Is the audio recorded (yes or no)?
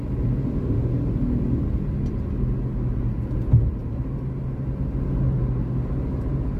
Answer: yes